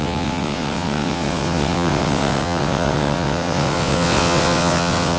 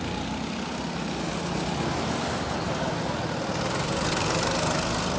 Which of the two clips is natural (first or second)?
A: second